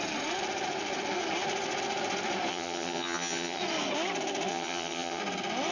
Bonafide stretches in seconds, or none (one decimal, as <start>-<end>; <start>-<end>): 0.0-2.5; 3.6-4.5; 5.2-5.7